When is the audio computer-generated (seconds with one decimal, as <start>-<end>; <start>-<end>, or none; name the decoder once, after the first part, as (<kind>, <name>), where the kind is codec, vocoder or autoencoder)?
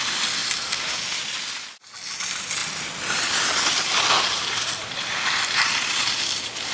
none